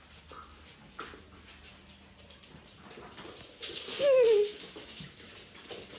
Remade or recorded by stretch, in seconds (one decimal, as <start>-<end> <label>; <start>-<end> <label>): 0.0-4.5 recorded; 4.5-5.3 remade; 5.3-6.0 recorded